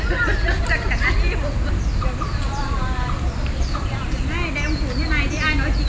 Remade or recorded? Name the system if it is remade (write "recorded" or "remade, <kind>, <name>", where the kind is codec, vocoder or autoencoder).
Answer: recorded